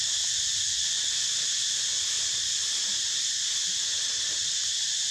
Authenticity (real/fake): fake